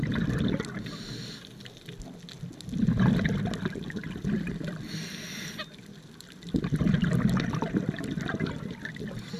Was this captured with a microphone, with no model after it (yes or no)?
yes